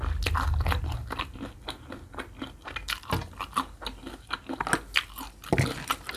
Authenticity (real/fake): real